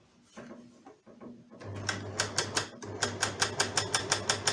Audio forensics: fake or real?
real